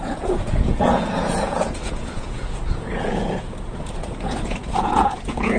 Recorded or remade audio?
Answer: remade